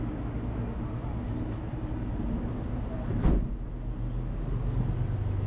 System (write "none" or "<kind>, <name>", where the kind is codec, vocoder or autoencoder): none